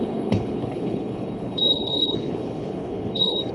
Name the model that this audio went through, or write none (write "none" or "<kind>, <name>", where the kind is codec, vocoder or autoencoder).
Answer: codec, HILCodec